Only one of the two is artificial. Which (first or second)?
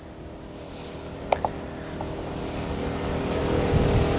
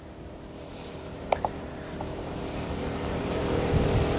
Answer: second